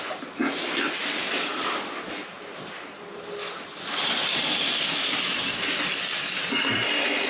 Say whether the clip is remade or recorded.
recorded